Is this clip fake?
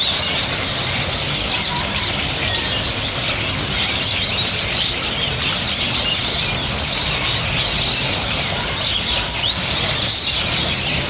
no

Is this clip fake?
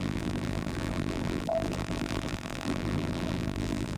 yes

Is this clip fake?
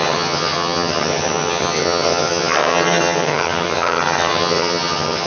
yes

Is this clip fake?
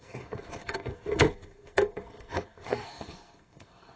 yes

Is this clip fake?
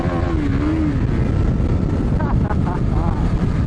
no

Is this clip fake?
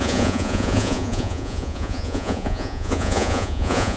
yes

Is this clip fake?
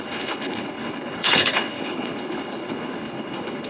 yes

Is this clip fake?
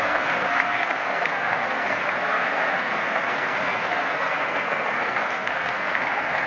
yes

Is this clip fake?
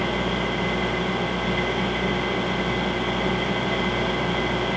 no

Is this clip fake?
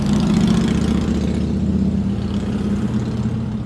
no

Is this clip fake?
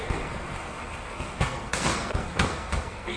yes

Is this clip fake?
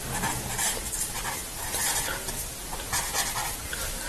no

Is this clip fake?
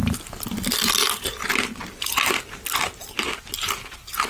no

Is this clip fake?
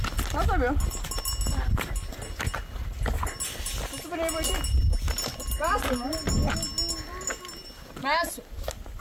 no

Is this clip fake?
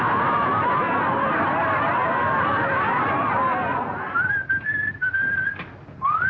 no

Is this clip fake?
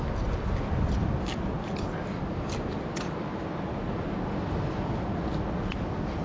no